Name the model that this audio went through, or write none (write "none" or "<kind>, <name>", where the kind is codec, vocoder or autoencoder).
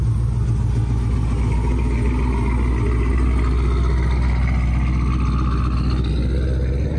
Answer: none